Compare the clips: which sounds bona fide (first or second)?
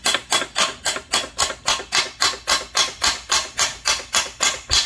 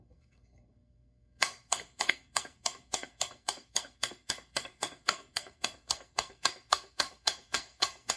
first